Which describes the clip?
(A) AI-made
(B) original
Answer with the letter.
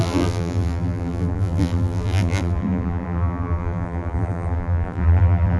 A